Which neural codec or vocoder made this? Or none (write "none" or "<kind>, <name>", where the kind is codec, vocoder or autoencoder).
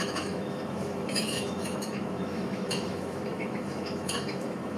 autoencoder, DAC-VAE